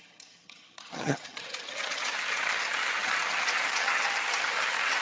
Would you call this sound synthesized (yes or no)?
yes